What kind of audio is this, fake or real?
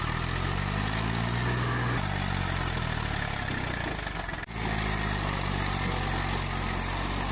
real